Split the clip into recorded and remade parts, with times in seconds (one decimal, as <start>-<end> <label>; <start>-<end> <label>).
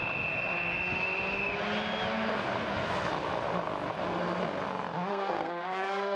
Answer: 0.0-5.1 recorded; 5.1-6.2 remade